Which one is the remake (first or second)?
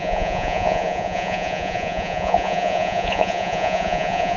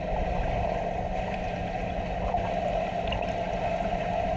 first